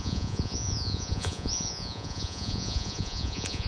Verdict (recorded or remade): remade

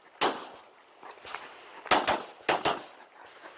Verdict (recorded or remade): recorded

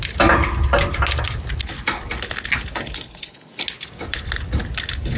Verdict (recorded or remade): recorded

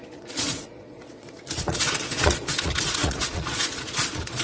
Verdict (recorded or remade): remade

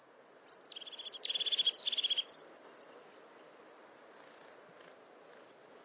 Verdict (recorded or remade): recorded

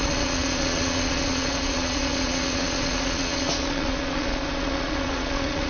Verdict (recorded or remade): remade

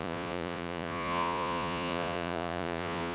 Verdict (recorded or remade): remade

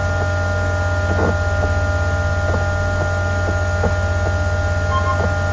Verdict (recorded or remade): recorded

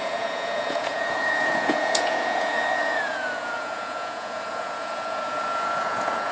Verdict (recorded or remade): remade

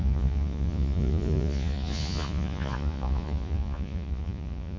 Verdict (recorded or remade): remade